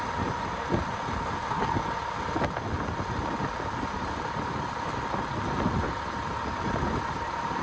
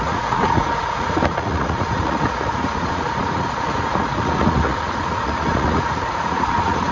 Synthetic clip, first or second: second